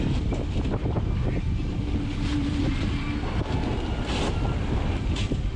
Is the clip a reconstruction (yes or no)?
no